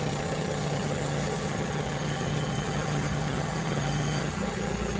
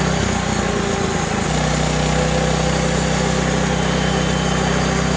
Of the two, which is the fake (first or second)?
first